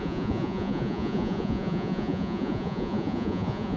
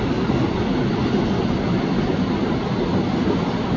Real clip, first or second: second